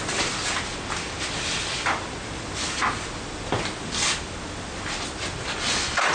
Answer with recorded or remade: recorded